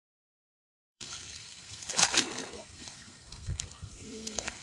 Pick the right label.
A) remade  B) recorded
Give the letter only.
A